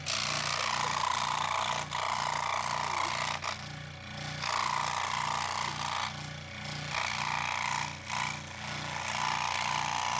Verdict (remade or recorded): recorded